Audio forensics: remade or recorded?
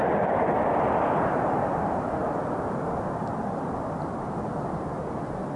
recorded